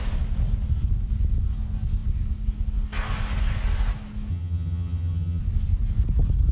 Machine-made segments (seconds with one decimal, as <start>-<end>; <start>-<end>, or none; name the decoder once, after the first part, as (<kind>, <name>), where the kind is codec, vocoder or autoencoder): 4.3-5.4 (vocoder, HiFi-GAN)